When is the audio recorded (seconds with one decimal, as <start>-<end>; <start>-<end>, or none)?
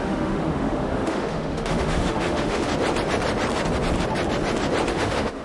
2.7-4.9